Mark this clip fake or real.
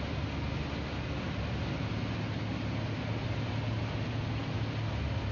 real